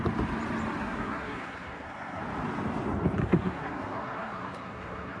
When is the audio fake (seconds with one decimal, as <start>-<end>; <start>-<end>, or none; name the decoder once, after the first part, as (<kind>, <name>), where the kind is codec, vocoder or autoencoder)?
0.8-2.2 (codec, SNAC); 3.2-5.2